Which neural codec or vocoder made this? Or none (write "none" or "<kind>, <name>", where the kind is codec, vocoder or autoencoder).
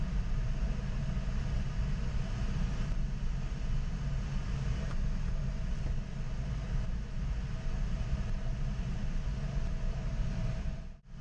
none